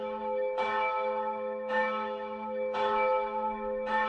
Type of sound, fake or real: fake